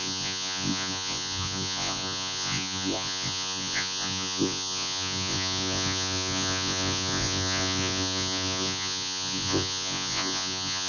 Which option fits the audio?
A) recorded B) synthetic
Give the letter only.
B